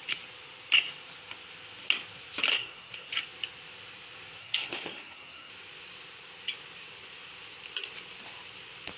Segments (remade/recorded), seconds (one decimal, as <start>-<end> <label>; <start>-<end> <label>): 0.0-2.5 recorded; 2.5-3.1 remade; 3.1-4.4 recorded; 4.4-5.5 remade; 5.5-9.0 recorded